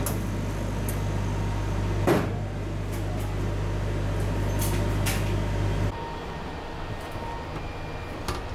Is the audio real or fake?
real